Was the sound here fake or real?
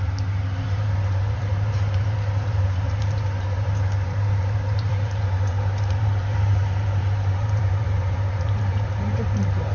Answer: fake